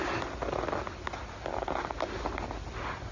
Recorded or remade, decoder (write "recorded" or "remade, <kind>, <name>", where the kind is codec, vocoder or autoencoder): recorded